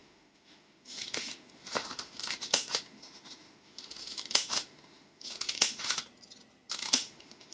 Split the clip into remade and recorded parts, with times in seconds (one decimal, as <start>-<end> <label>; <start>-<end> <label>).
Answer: 0.0-6.0 remade; 6.0-6.7 recorded; 6.7-7.5 remade